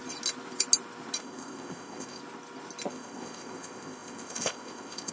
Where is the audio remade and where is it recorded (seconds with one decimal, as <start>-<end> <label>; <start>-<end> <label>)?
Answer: 0.0-1.2 recorded; 1.2-2.2 remade; 2.2-2.9 recorded; 2.9-5.1 remade